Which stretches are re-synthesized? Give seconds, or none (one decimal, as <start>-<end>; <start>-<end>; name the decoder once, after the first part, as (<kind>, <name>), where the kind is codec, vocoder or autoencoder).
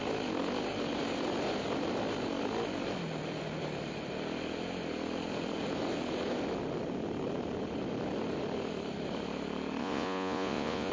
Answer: 9.8-10.9 (vocoder, Vocos)